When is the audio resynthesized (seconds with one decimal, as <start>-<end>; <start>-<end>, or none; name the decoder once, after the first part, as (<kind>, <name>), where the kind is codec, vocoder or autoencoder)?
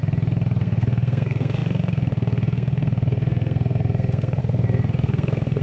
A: 0.6-5.6 (codec, SNAC)